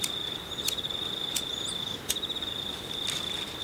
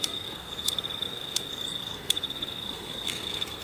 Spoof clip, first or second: second